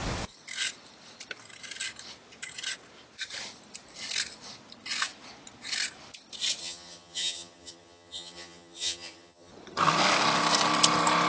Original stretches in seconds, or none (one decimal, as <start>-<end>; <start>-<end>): 0.0-6.6; 9.5-11.3